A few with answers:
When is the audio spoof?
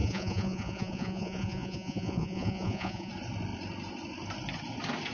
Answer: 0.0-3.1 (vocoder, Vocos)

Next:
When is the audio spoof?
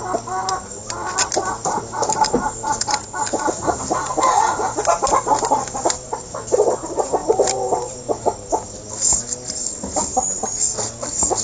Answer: 7.2-8.0 (vocoder, BigVGAN v2); 9.6-10.6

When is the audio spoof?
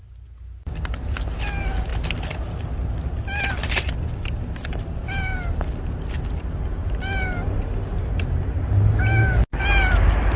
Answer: none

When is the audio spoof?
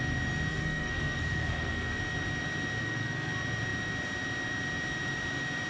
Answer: 0.5-2.0 (codec, SNAC); 2.8-3.3